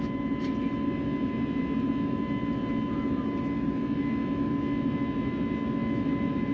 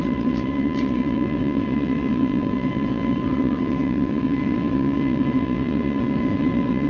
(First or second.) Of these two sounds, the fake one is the second